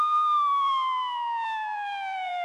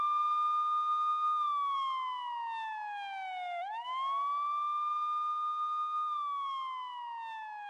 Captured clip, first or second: second